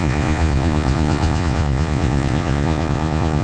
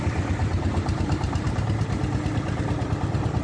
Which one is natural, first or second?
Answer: second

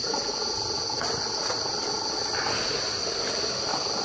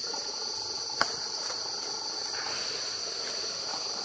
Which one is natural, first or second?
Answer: first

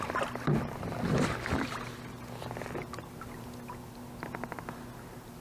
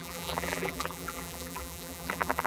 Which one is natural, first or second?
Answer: first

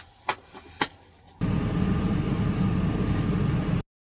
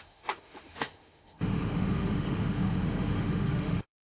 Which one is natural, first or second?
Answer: first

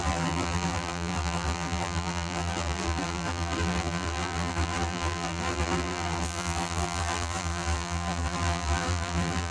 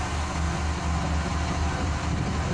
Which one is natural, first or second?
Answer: second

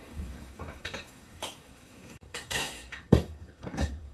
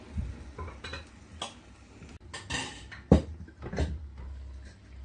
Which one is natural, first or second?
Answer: second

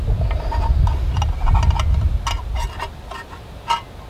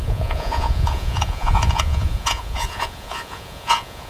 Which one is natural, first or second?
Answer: first